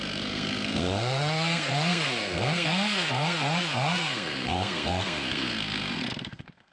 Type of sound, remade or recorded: remade